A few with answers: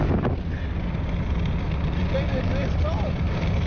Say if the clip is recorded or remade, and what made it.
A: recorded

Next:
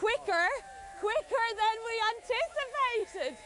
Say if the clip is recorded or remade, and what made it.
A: remade, autoencoder, DAC-VAE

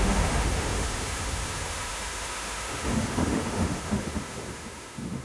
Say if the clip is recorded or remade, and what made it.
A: remade, autoencoder, DAC-VAE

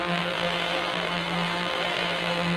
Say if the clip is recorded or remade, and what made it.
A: remade, vocoder, BigVGAN v2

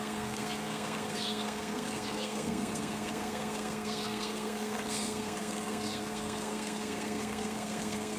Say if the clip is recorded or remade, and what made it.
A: remade, codec, SNAC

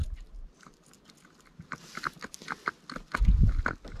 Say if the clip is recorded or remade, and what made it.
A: recorded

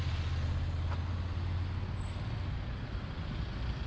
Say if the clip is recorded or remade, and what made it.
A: recorded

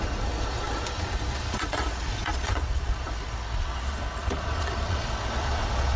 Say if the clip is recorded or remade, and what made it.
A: remade, vocoder, Vocos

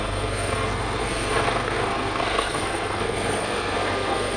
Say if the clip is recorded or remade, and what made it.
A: remade, codec, SNAC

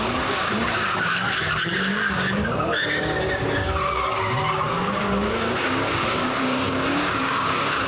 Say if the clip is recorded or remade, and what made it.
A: remade, codec, DAC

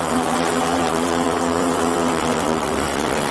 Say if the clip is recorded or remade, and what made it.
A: remade, vocoder, WaveNeXt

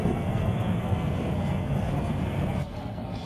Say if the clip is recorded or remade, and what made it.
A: remade, codec, SNAC